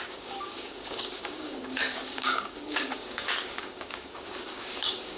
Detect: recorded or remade remade